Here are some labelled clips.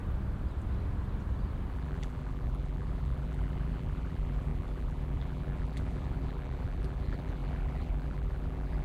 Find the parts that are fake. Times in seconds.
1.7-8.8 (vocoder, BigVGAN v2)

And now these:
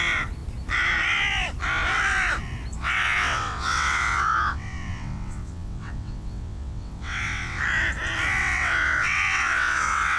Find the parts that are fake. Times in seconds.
2.8-7.6 (vocoder, WaveNeXt); 8.4-10.2